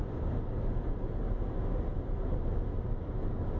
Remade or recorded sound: recorded